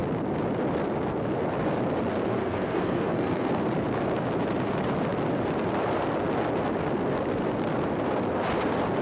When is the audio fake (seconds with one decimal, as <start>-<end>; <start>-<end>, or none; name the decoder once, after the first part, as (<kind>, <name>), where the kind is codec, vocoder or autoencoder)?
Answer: 2.3-3.5 (codec, SNAC)